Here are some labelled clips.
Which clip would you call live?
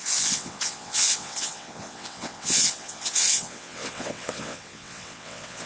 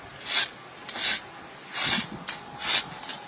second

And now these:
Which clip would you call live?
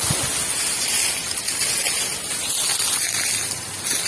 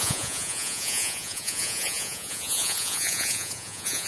first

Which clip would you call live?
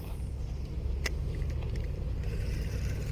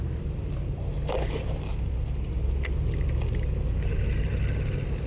second